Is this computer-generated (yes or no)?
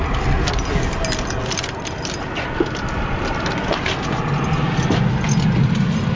no